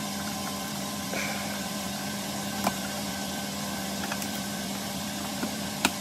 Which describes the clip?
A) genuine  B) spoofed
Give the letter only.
B